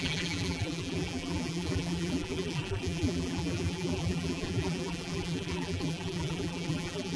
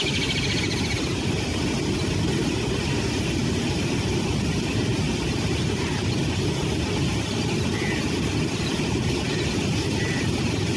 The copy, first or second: first